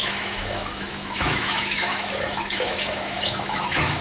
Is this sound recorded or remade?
remade